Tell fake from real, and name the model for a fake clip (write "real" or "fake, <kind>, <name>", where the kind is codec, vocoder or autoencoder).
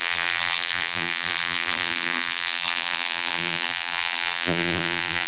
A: fake, vocoder, BigVGAN v2